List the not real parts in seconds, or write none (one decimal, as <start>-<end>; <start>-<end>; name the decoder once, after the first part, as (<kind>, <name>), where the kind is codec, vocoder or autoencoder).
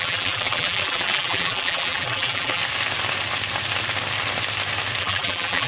0.0-2.6 (vocoder, BigVGAN v2); 5.0-5.7